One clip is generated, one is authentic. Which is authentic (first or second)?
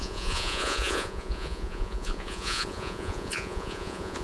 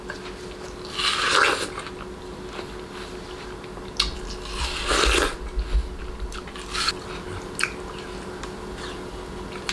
second